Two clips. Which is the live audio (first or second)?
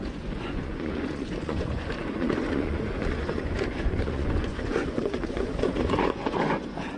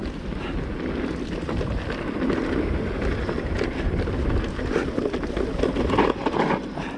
second